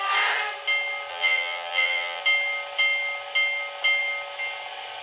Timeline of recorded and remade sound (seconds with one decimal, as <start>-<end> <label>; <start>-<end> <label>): 0.0-1.1 recorded; 1.1-2.2 remade; 2.2-5.0 recorded